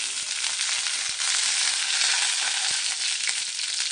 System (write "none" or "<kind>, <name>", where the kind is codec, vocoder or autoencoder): none